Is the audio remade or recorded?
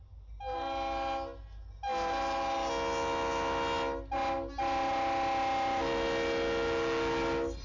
recorded